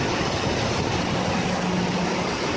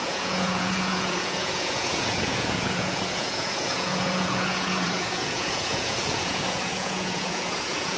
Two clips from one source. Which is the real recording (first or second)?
first